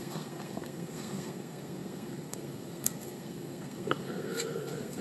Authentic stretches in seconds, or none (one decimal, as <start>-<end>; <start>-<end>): none